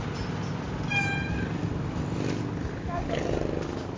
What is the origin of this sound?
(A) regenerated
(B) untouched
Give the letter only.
B